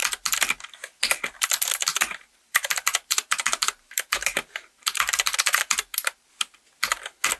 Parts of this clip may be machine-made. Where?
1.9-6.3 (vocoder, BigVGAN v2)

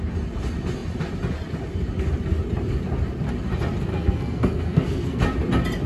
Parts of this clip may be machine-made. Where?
3.9-5.2 (codec, SNAC)